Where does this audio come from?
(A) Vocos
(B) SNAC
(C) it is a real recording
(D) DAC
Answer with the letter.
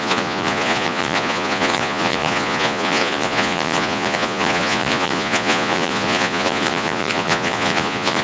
A